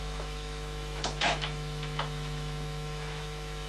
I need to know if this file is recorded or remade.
remade